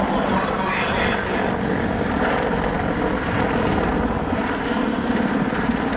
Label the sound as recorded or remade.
recorded